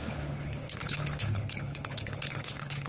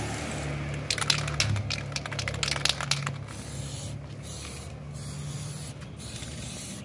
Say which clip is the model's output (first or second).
first